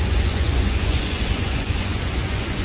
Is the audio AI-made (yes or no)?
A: yes